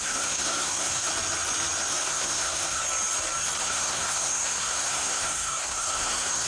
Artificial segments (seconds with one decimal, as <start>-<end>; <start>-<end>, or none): 0.0-1.1; 1.9-2.8; 3.6-6.5